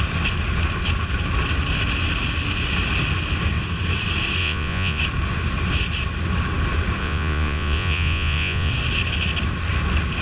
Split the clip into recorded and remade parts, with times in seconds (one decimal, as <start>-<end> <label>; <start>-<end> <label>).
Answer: 0.0-4.4 recorded; 4.4-5.0 remade; 5.0-7.0 recorded; 7.0-8.7 remade; 8.7-10.2 recorded